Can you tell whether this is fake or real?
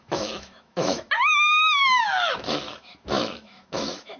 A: fake